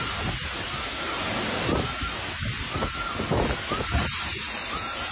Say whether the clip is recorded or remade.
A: recorded